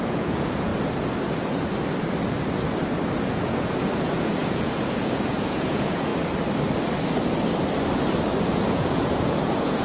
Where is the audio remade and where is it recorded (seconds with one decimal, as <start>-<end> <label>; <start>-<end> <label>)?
0.0-0.7 remade; 0.7-3.2 recorded; 3.2-6.1 remade; 6.1-8.7 recorded; 8.7-9.8 remade